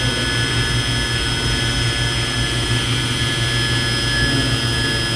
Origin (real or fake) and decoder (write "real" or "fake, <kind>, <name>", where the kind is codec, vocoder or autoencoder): real